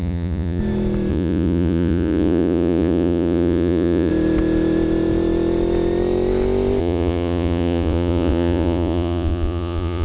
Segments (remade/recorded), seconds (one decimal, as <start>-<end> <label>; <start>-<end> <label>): 0.0-0.6 remade; 0.6-1.1 recorded; 1.1-4.1 remade; 4.1-6.8 recorded; 6.8-10.0 remade